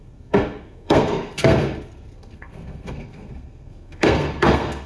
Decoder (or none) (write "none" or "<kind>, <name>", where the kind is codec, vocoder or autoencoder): codec, SNAC